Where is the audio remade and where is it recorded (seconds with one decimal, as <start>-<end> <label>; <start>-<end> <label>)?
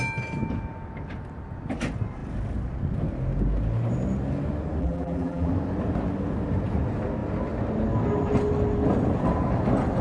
0.0-4.8 recorded; 4.8-5.5 remade; 5.5-10.0 recorded